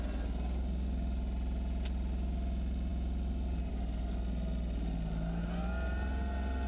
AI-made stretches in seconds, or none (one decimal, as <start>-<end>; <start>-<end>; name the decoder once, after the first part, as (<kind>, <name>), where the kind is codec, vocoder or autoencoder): none